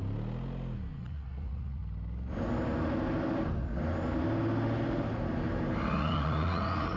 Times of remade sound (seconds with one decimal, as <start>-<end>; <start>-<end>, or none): 1.0-1.8; 6.0-7.0